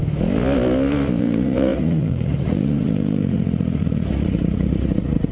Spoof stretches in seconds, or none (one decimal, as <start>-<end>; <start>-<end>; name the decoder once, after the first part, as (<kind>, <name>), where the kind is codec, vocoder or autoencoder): 1.2-5.3 (vocoder, Vocos)